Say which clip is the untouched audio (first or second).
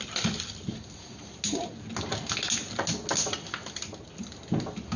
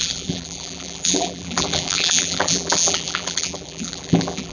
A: first